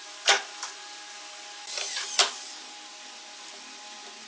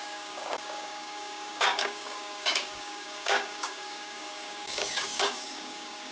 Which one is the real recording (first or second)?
first